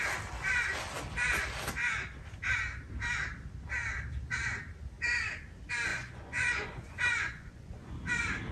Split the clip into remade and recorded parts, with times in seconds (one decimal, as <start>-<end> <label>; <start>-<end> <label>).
0.0-5.9 recorded; 5.9-8.1 remade; 8.1-8.5 recorded